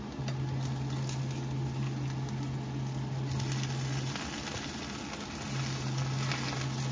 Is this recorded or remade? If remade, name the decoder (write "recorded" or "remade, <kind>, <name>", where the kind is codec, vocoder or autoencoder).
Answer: recorded